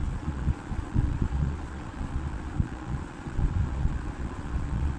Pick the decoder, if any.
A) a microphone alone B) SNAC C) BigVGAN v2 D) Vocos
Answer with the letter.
D